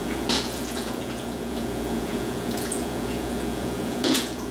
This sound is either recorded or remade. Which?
remade